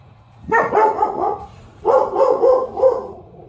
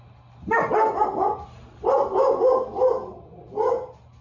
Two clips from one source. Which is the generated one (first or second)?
first